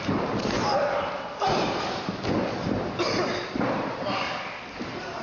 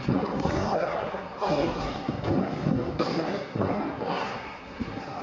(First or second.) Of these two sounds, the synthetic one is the second